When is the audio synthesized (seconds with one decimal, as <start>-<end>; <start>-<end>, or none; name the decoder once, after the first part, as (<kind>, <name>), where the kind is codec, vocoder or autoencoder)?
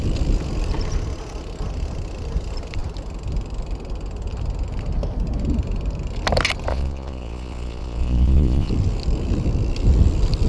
6.7-8.7 (vocoder, Vocos)